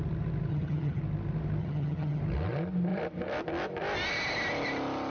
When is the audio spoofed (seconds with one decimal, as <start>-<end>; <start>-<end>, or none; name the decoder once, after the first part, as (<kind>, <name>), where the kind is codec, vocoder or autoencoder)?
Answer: 0.5-1.0 (vocoder, HiFi-GAN); 1.6-2.2